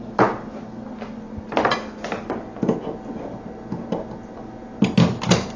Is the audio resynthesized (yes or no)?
no